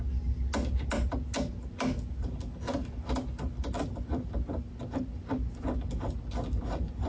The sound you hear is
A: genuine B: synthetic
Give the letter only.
A